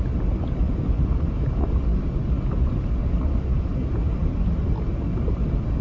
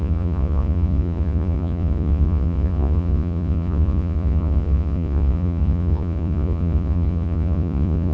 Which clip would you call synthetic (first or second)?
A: second